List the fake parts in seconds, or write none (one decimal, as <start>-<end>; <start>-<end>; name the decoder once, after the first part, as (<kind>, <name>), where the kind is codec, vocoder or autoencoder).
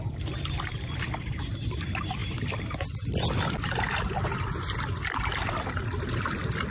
none